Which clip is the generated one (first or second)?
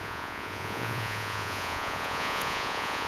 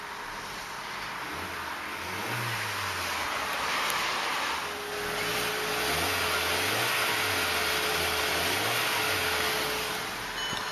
first